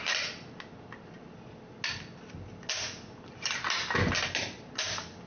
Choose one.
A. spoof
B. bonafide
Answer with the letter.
B